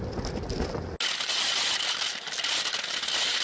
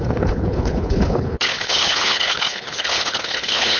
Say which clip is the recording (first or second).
first